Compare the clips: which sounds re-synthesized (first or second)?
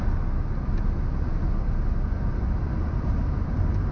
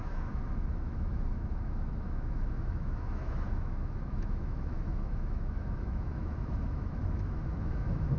second